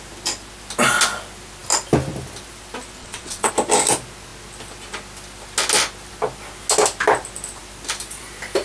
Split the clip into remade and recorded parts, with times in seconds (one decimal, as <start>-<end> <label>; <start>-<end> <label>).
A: 0.0-3.0 recorded; 3.0-3.5 remade; 3.5-8.6 recorded